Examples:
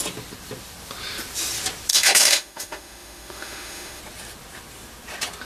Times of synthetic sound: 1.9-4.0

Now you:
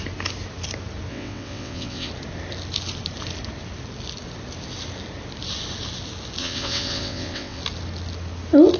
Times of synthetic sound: 1.1-2.1; 6.4-7.6

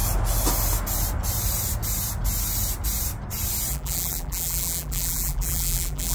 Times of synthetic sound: 3.7-6.1

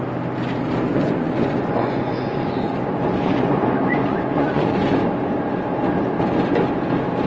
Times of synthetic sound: 0.9-5.0

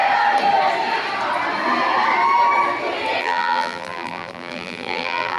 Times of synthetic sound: 3.2-5.4

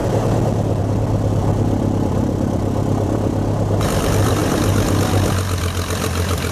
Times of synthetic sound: 0.8-4.4; 5.6-6.5